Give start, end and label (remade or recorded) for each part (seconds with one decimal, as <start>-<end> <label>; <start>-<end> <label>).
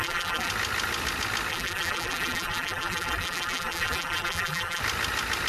0.0-0.5 remade; 0.5-1.5 recorded; 1.5-4.8 remade; 4.8-5.5 recorded